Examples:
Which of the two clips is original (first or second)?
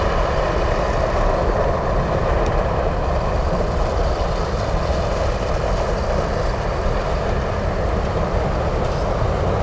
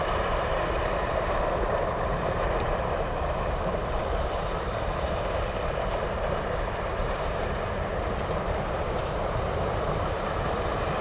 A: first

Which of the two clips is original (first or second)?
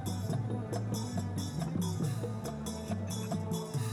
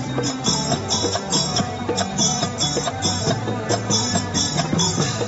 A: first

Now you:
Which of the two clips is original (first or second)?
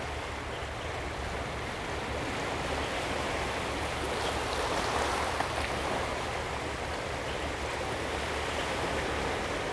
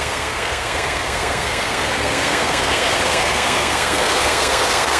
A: first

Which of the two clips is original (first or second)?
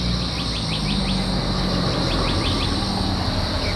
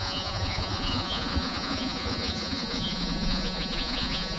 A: first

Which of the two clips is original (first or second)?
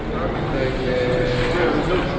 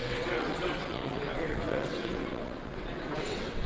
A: first